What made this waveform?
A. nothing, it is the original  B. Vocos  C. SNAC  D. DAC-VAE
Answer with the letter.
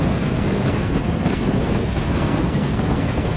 C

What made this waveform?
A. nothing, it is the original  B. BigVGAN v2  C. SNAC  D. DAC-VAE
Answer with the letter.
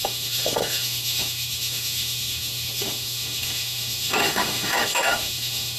D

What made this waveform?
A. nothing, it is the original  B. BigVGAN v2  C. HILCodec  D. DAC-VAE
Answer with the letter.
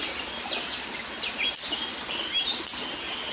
A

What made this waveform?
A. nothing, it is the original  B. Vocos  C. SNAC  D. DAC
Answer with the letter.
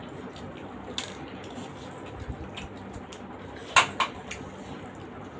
A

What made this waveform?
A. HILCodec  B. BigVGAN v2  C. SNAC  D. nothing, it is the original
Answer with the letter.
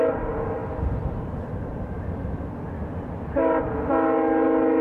D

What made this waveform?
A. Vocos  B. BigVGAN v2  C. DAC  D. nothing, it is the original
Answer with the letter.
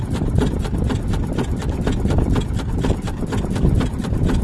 B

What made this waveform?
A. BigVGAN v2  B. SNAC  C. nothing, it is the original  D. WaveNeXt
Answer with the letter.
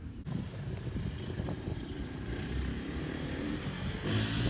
A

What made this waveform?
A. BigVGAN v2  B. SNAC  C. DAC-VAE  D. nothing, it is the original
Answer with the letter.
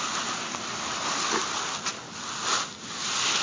D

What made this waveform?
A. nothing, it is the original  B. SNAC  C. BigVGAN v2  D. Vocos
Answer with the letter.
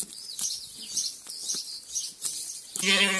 A